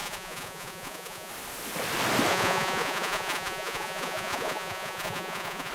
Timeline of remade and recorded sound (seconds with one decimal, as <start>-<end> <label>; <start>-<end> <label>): 0.0-1.3 remade; 1.3-2.3 recorded; 2.3-5.7 remade